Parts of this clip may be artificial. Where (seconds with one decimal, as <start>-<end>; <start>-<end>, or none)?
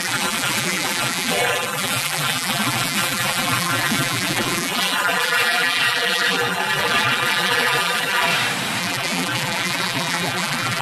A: 0.0-8.3; 8.8-10.8